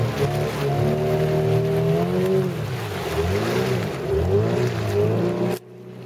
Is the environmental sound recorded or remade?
recorded